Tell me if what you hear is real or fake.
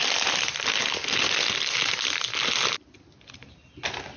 real